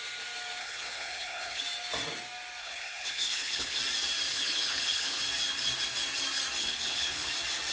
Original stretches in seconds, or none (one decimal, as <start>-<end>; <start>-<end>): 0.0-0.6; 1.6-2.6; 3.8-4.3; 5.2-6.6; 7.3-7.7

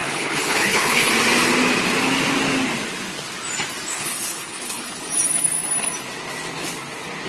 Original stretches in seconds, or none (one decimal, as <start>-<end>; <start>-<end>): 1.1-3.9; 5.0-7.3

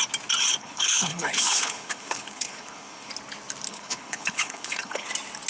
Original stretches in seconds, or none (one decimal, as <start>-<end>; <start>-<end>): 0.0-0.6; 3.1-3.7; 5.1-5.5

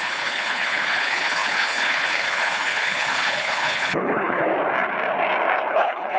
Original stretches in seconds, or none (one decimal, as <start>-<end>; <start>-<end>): 4.5-5.7

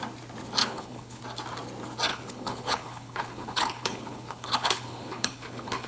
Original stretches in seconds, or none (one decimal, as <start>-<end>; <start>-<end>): 0.0-0.6; 1.2-2.1

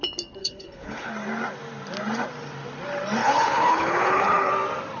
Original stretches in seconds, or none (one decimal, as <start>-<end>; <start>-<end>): 0.0-0.4; 1.1-3.2; 4.5-5.0